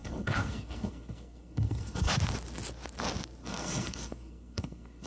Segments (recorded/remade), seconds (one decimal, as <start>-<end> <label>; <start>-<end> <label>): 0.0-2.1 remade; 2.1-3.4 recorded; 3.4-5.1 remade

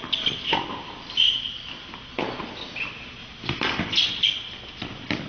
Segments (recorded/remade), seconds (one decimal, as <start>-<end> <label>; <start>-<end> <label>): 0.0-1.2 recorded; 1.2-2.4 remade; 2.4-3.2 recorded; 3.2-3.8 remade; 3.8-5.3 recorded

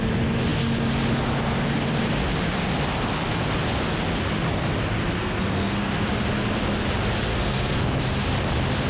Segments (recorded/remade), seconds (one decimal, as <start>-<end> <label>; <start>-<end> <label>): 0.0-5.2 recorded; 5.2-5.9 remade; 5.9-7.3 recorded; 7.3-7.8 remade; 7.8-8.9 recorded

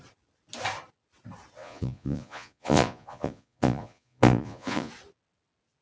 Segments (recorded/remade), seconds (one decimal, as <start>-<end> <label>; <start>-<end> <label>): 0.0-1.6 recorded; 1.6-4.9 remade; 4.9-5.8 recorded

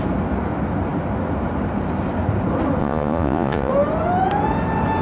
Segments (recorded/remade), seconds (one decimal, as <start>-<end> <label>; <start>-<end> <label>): 0.0-2.8 recorded; 2.8-3.7 remade; 3.7-5.0 recorded

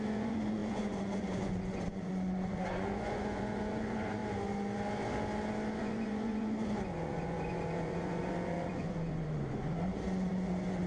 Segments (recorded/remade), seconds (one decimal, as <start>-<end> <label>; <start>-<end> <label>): 0.0-4.2 remade; 4.2-5.8 recorded; 5.8-10.9 remade

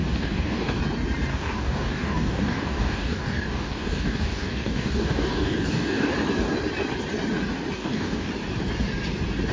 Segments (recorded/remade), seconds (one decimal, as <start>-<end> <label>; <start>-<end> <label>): 0.0-0.8 remade; 0.8-1.3 recorded; 1.3-6.1 remade; 6.1-7.8 recorded; 7.8-8.3 remade; 8.3-9.5 recorded

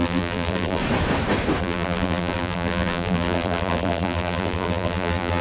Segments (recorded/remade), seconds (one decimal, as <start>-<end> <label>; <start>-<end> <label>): 0.0-0.8 remade; 0.8-1.6 recorded; 1.6-5.4 remade